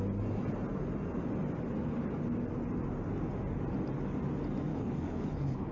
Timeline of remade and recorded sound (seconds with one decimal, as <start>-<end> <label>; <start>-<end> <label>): 0.0-4.7 recorded; 4.7-5.7 remade